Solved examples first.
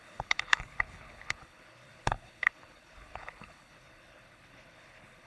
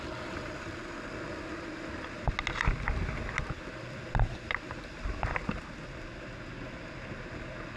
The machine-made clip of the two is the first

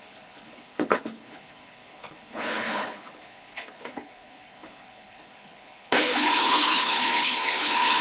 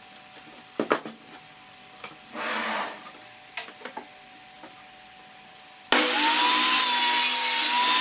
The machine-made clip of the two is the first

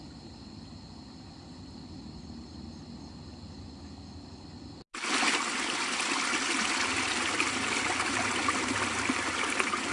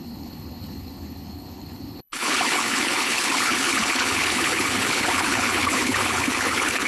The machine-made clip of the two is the second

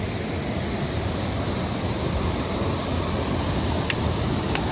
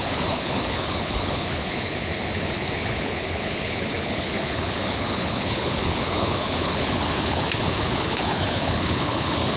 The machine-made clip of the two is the second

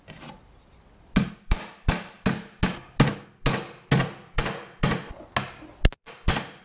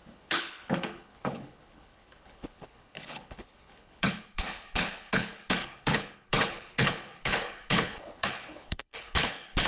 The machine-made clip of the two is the second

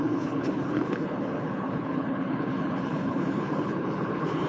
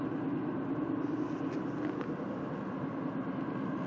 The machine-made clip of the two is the first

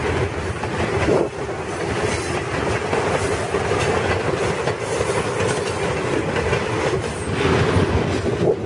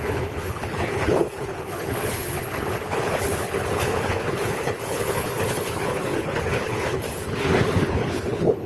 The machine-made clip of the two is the second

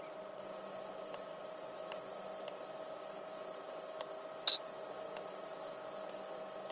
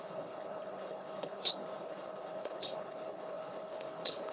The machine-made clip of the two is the second